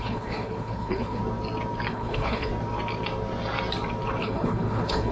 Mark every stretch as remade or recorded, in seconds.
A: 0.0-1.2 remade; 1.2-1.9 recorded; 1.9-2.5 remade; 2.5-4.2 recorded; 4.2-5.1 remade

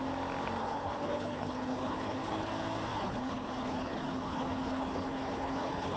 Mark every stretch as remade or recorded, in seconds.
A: 0.0-0.6 recorded; 0.6-2.5 remade; 2.5-2.9 recorded; 2.9-6.0 remade

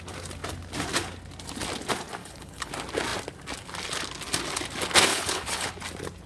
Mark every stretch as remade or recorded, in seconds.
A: 0.0-2.2 recorded; 2.2-2.7 remade; 2.7-5.1 recorded; 5.1-5.7 remade; 5.7-6.3 recorded

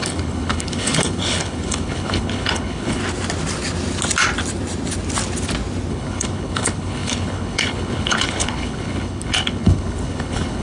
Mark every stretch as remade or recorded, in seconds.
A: 0.0-3.0 remade; 3.0-5.9 recorded; 5.9-10.6 remade